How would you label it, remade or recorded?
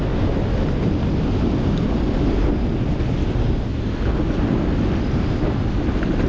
recorded